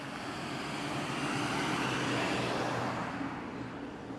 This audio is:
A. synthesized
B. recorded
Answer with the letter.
B